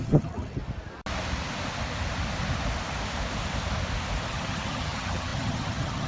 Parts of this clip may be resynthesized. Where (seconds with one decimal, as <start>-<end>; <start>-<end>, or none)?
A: 0.0-0.6; 4.3-6.1